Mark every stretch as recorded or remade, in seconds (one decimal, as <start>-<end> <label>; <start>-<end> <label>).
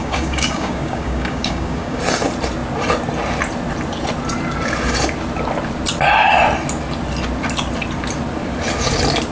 0.0-2.0 remade; 2.0-9.3 recorded